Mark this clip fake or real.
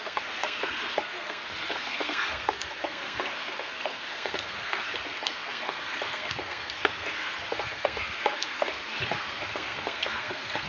fake